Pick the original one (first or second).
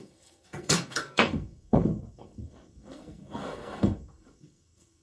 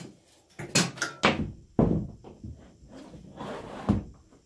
second